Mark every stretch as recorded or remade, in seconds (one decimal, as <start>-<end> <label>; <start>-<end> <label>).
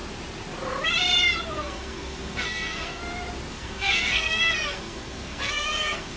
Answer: 0.0-1.5 recorded; 1.5-3.0 remade; 3.0-3.5 recorded; 3.5-6.2 remade